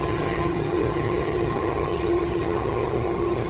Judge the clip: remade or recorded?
remade